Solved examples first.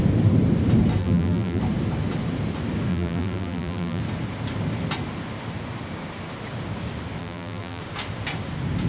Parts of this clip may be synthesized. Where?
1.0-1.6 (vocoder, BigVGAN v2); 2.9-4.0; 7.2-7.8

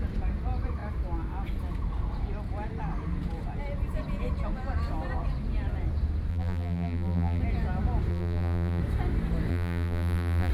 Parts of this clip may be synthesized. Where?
6.3-7.4 (vocoder, BigVGAN v2); 8.1-8.8; 9.5-10.5

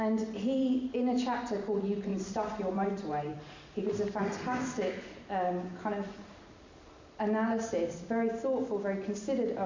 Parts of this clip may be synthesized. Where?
2.1-4.9 (vocoder, BigVGAN v2); 5.7-7.2